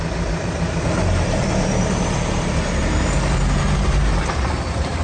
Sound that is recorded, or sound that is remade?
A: remade